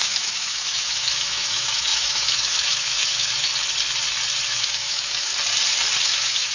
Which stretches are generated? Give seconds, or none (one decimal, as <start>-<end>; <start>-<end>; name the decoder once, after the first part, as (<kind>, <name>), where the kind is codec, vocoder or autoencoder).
0.0-3.5 (autoencoder, DAC-VAE); 4.4-5.3; 6.0-6.5